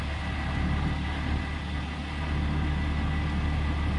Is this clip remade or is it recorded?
recorded